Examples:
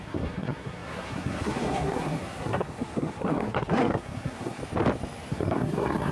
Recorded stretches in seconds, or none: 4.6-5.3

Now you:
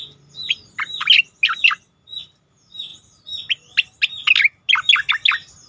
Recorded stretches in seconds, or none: 0.0-5.7